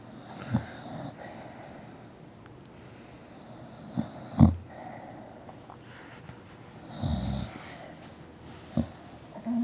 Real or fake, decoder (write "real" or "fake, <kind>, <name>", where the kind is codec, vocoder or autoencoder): real